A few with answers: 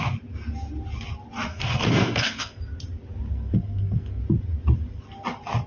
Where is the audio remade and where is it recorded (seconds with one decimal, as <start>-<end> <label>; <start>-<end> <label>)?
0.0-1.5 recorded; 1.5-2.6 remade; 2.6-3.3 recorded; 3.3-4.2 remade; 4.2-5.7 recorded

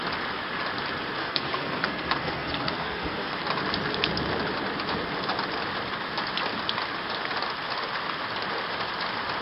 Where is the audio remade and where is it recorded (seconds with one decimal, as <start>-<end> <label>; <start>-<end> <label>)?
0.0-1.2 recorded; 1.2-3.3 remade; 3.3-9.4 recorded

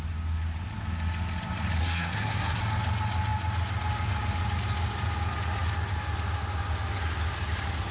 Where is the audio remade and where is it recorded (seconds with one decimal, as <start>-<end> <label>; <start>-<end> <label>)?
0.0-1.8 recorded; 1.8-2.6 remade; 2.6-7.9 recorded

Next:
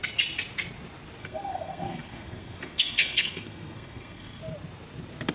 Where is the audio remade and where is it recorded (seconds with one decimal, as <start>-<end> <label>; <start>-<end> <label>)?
0.0-1.2 recorded; 1.2-4.4 remade; 4.4-5.3 recorded

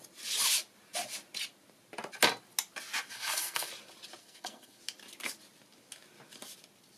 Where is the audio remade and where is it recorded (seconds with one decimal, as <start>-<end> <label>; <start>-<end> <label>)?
0.0-3.1 recorded; 3.1-3.7 remade; 3.7-4.2 recorded; 4.2-4.8 remade; 4.8-7.0 recorded